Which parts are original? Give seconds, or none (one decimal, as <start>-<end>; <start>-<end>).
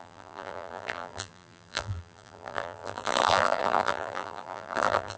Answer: none